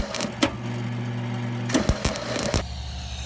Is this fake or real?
real